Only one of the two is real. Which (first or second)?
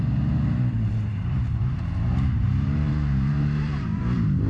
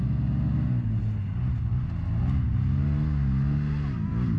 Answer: second